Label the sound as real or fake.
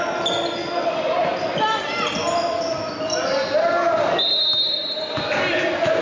real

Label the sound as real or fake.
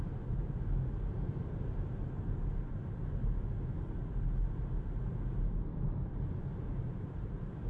real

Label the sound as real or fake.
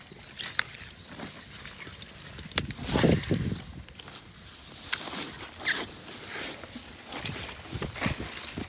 real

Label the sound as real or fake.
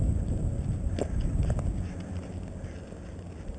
real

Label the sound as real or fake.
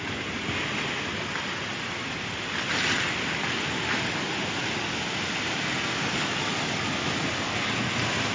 real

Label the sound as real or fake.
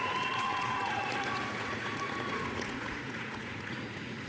fake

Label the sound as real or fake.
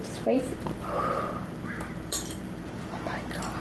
fake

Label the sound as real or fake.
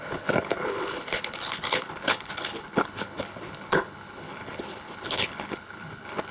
fake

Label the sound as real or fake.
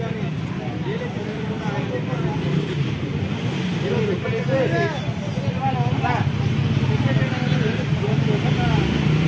real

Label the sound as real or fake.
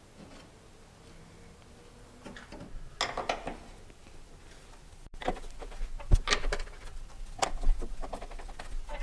real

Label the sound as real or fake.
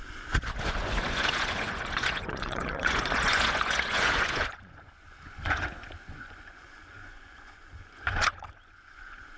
fake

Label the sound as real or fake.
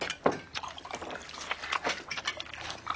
real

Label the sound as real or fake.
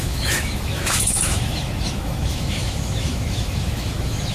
fake